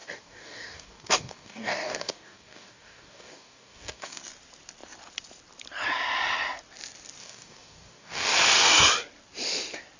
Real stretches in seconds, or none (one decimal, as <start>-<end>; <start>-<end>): 4.2-7.2; 8.3-10.0